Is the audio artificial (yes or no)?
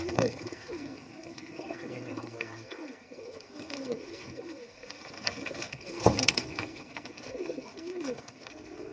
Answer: yes